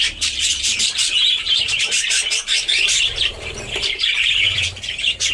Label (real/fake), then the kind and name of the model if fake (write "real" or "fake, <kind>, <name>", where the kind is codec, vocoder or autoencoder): fake, vocoder, BigVGAN v2